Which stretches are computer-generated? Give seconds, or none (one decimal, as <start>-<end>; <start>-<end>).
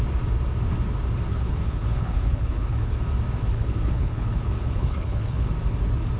1.3-3.0; 3.5-5.5